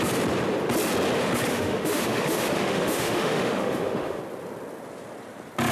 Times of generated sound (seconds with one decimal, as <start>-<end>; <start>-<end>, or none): 1.5-4.2